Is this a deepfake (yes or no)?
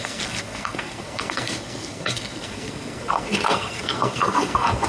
yes